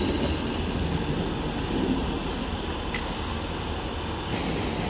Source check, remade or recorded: recorded